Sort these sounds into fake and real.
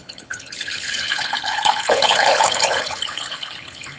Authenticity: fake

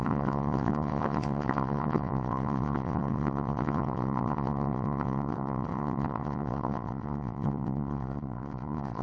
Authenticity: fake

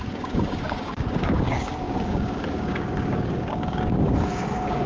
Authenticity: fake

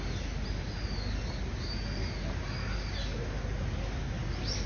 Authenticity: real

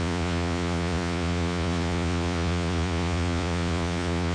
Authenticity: fake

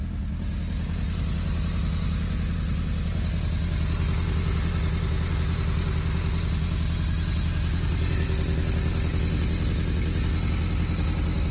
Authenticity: real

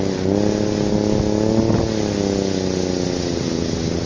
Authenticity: real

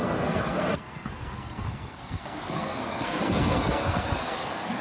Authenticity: fake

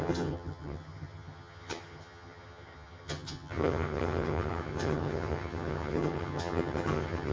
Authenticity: fake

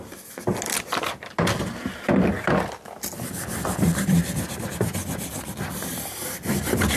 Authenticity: real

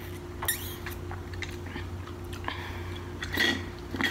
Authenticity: real